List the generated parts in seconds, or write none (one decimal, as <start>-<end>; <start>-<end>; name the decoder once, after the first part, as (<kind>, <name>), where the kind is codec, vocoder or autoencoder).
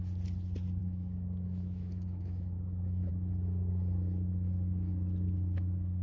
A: 0.8-3.1 (autoencoder, DAC-VAE)